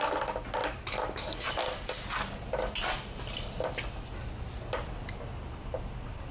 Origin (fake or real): real